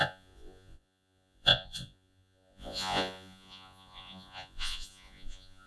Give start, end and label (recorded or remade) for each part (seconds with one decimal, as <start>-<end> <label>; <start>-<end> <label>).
0.0-5.7 remade